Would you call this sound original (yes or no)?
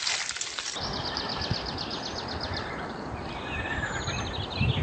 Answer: yes